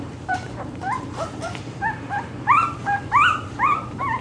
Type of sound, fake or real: fake